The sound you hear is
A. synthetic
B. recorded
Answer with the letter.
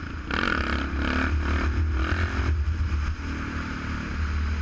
B